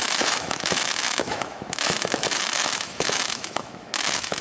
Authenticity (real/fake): fake